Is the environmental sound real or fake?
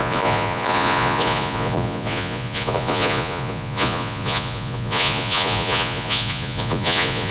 fake